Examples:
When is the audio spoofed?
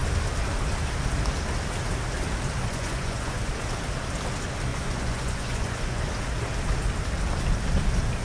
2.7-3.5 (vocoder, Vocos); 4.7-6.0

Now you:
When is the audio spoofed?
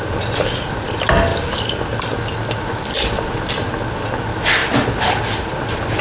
none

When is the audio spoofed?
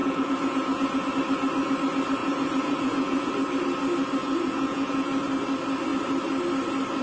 0.0-1.1 (vocoder, Vocos); 2.2-3.3; 4.2-5.1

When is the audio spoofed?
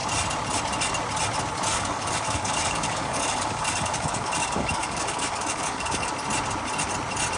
1.7-6.1 (codec, DAC)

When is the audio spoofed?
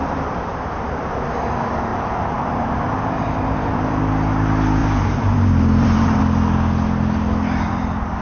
0.5-1.0 (vocoder, BigVGAN v2); 1.9-4.0; 4.8-6.2